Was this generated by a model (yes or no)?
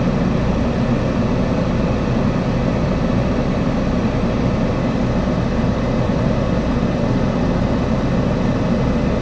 no